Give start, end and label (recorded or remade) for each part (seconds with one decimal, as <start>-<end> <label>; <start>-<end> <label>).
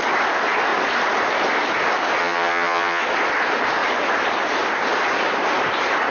0.0-2.2 recorded; 2.2-3.0 remade; 3.0-6.1 recorded